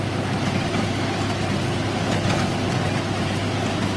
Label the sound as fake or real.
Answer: real